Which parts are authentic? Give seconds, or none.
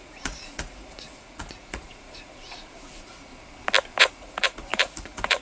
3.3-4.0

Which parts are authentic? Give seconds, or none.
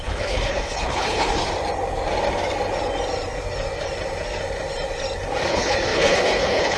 1.4-5.5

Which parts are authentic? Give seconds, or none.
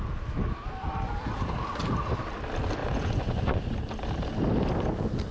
0.0-2.8; 3.6-5.3